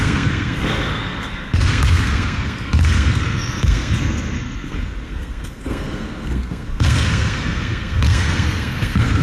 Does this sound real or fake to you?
fake